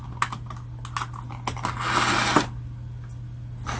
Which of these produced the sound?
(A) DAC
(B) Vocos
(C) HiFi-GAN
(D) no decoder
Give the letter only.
D